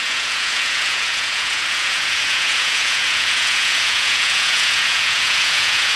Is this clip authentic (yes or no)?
no